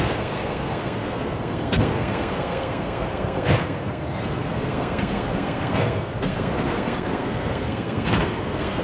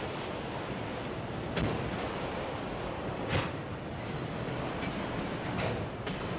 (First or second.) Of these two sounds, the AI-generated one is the first